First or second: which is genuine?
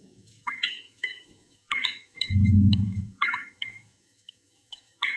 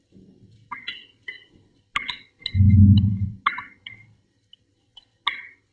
second